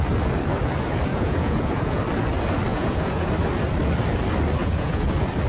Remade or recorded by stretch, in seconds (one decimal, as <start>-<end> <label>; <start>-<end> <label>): 0.0-1.1 recorded; 1.1-2.0 remade; 2.0-2.7 recorded; 2.7-3.3 remade; 3.3-4.6 recorded; 4.6-5.1 remade; 5.1-5.5 recorded